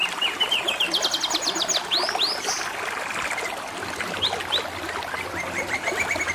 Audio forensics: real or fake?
real